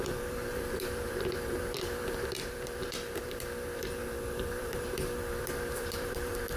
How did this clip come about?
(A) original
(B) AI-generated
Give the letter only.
B